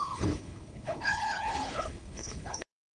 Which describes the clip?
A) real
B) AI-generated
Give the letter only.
B